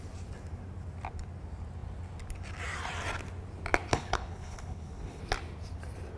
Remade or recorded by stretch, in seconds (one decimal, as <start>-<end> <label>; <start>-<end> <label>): 0.0-3.9 recorded; 3.9-5.2 remade; 5.2-6.2 recorded